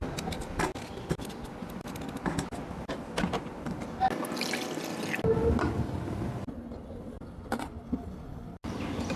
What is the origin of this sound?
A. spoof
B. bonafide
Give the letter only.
B